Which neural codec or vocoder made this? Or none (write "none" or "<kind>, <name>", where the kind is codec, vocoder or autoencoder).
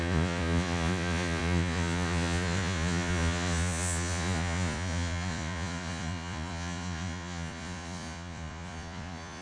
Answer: vocoder, Vocos